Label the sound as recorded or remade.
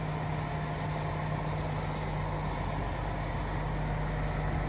recorded